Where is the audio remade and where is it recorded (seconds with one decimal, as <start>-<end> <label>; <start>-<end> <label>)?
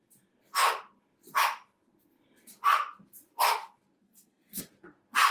0.0-4.0 recorded; 4.0-4.6 remade; 4.6-5.3 recorded